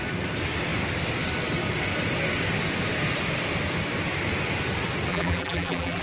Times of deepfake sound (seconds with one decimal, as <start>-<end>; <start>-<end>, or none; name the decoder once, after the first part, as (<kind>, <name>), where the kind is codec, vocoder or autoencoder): 5.1-6.0 (vocoder, BigVGAN v2)